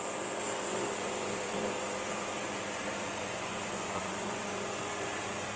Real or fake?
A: fake